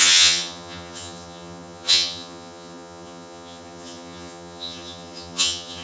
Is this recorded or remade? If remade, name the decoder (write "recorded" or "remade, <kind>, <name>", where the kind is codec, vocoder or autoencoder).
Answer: remade, vocoder, HiFi-GAN